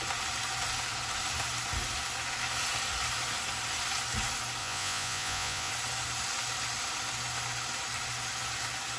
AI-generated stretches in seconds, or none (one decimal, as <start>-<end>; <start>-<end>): 4.6-5.7